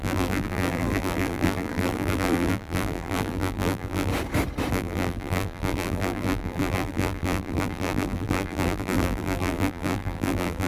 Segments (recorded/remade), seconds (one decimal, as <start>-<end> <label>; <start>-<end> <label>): 0.0-4.1 remade; 4.1-4.7 recorded; 4.7-10.7 remade